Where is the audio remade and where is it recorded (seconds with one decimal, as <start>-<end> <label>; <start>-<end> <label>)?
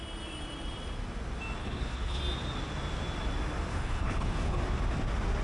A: 0.0-1.6 recorded; 1.6-2.2 remade; 2.2-3.7 recorded; 3.7-4.6 remade; 4.6-5.4 recorded